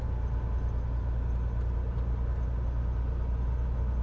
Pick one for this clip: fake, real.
real